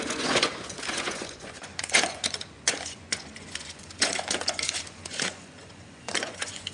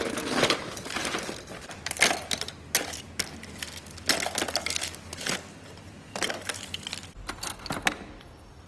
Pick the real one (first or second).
second